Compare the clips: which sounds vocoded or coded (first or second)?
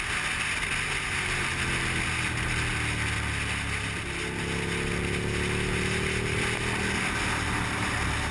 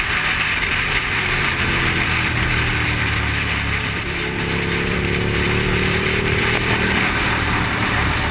second